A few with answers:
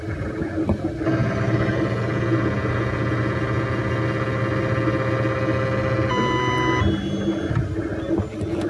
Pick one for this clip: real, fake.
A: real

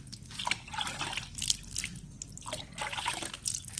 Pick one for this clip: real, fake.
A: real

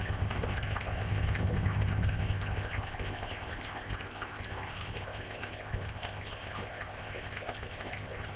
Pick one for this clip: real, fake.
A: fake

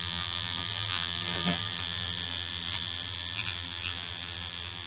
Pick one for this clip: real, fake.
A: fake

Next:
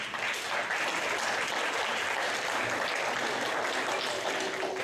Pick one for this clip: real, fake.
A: real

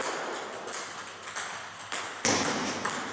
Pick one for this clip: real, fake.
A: real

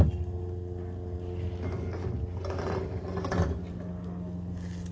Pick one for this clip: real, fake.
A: real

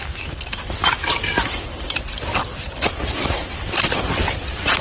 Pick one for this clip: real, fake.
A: real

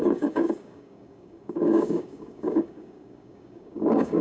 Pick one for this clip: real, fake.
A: fake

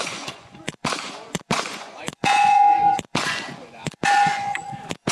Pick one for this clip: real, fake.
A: fake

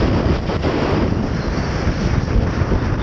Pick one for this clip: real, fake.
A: real